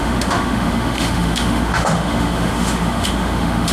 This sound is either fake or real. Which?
fake